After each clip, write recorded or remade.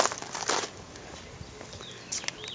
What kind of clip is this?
recorded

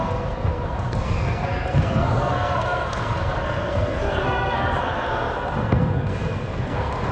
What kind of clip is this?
remade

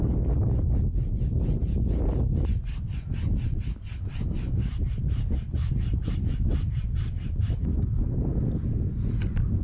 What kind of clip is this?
recorded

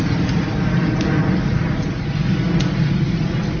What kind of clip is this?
recorded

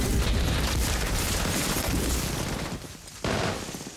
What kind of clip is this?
remade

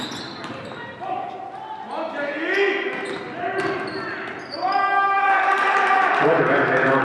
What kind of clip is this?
recorded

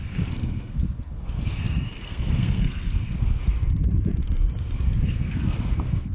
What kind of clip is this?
remade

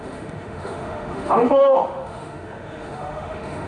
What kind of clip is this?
remade